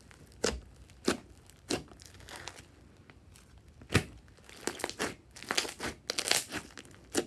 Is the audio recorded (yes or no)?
yes